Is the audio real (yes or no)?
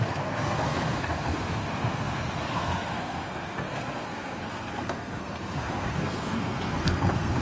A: no